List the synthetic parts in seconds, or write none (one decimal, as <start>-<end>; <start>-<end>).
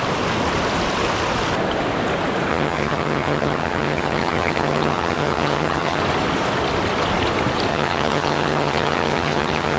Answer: 2.5-6.0; 7.7-9.8